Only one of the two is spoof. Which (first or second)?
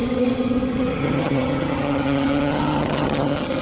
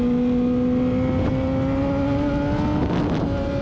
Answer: first